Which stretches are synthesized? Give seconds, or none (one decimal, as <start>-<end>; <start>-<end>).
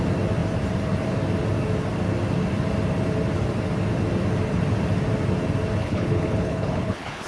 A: 5.8-7.3